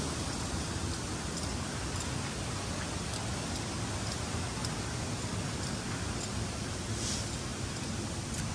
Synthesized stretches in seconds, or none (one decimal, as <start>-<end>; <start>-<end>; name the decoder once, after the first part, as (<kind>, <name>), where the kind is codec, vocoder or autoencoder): none